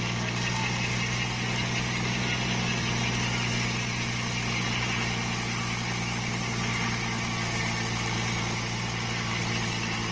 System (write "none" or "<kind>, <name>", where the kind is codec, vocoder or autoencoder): none